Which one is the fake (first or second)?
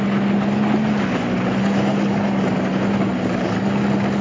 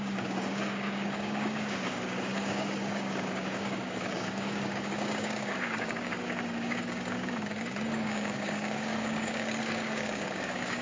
second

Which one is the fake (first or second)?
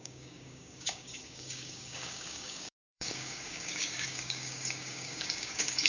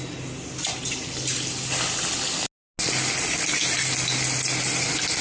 first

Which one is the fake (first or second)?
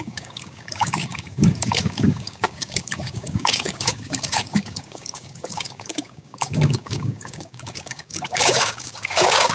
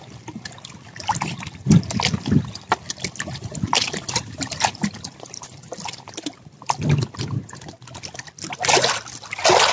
first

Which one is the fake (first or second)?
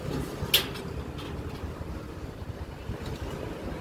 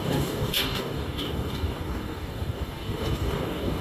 second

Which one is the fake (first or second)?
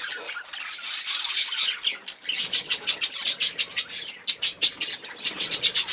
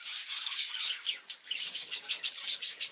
second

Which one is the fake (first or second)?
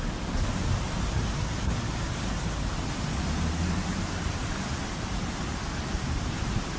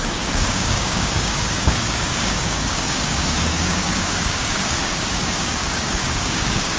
second